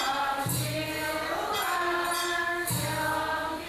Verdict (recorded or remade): recorded